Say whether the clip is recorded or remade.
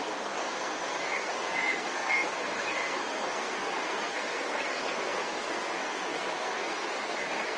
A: remade